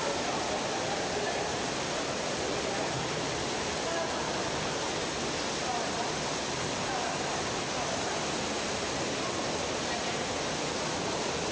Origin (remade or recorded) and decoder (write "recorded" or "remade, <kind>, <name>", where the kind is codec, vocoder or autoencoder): recorded